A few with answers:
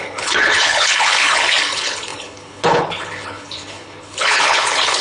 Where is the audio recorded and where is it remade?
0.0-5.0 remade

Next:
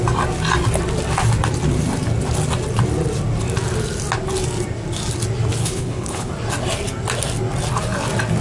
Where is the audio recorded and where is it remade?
0.0-5.6 recorded; 5.6-6.3 remade; 6.3-8.4 recorded